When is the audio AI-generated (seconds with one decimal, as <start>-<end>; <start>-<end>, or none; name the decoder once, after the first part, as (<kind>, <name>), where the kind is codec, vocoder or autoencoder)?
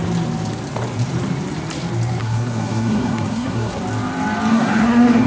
2.2-3.8 (codec, SNAC); 4.5-5.3